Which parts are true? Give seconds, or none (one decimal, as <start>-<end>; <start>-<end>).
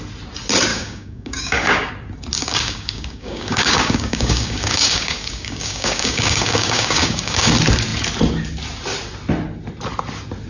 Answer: 0.0-0.7; 1.9-2.4; 7.5-10.5